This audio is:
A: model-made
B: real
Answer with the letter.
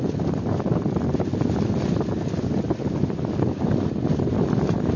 B